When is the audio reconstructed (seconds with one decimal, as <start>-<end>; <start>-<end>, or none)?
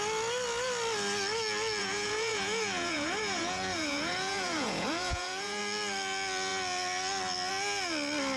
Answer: 1.8-5.6